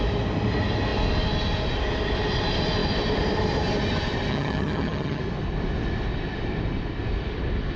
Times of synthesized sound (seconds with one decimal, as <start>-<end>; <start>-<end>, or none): 4.3-5.2